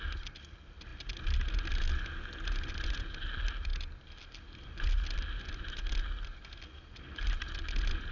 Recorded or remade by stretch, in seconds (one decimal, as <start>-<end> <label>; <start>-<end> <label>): 0.0-8.1 recorded